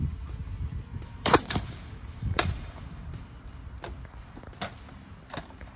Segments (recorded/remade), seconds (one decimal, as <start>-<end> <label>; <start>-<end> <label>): 0.0-0.9 recorded; 0.9-3.2 remade; 3.2-5.8 recorded